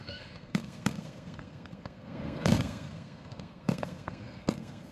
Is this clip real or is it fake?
fake